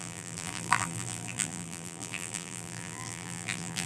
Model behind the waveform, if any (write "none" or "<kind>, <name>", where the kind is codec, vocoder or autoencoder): vocoder, BigVGAN v2